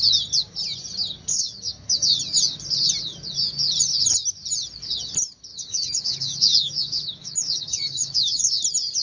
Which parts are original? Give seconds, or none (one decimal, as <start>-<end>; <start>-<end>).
0.0-1.3; 2.1-5.5; 8.5-9.0